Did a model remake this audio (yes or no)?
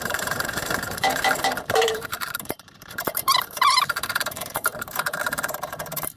yes